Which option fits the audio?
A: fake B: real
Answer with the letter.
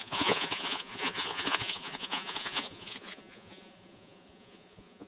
A